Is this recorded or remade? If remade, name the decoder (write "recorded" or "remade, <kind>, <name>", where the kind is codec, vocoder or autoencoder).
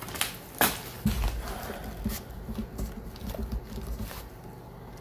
recorded